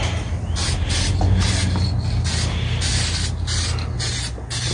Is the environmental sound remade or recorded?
recorded